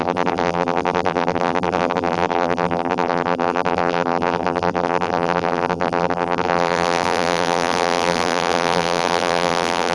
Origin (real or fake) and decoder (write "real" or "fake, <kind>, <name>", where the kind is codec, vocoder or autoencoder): fake, vocoder, BigVGAN v2